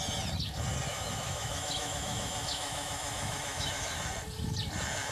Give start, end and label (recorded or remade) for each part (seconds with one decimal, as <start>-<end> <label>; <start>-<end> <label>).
0.0-0.9 recorded; 0.9-4.0 remade; 4.0-5.1 recorded